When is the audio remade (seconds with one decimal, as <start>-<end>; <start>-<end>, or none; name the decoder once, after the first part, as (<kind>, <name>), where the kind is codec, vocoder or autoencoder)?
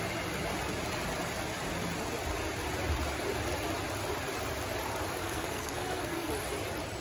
5.2-6.3 (codec, SNAC)